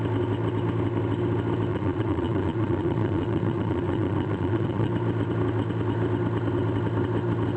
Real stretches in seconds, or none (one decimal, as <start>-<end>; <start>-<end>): 0.0-1.7; 4.9-7.6